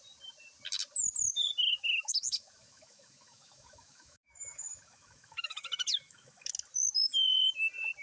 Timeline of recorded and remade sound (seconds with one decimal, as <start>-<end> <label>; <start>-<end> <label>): 0.0-1.7 recorded; 1.7-6.5 remade; 6.5-8.0 recorded